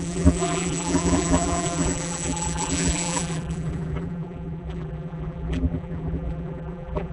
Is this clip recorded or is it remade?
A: remade